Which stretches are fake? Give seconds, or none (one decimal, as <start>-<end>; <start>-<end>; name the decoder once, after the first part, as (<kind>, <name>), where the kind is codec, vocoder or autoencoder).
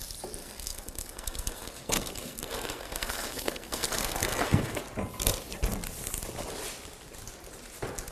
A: 0.4-4.8 (codec, SNAC)